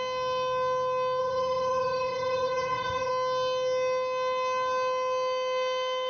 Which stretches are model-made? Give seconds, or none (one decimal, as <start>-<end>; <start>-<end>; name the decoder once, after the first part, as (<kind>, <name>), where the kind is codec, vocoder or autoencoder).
1.2-3.1 (vocoder, Vocos)